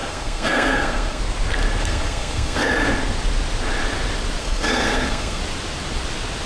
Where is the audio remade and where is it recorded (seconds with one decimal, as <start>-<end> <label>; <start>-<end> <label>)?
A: 0.0-1.2 remade; 1.2-1.8 recorded; 1.8-2.7 remade; 2.7-4.4 recorded; 4.4-5.4 remade; 5.4-6.5 recorded